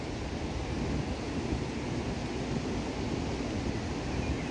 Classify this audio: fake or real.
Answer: real